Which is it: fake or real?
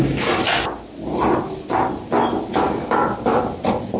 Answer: real